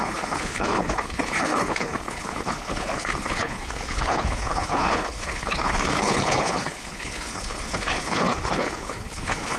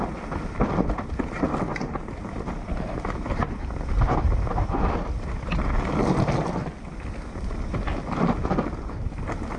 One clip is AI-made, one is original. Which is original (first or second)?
second